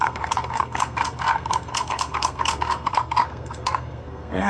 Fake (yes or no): yes